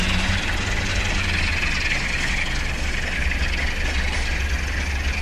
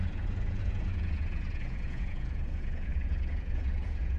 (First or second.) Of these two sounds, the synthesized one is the second